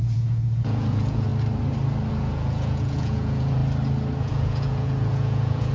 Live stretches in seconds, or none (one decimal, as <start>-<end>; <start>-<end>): 1.3-2.1; 3.6-4.2